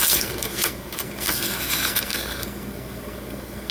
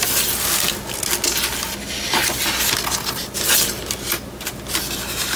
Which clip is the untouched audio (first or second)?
second